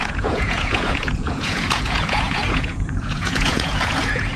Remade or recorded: remade